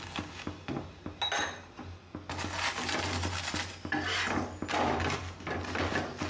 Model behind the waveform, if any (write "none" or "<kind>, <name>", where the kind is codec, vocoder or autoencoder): none